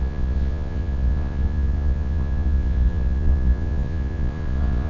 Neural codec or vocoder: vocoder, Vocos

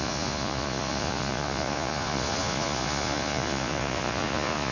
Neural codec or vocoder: vocoder, Vocos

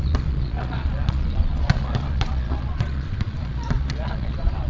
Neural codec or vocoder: vocoder, Vocos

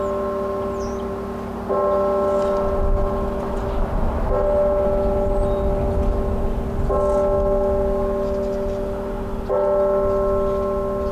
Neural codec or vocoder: none